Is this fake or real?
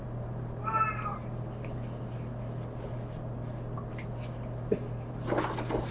real